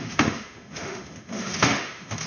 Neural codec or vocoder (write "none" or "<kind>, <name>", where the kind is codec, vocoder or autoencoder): autoencoder, DAC-VAE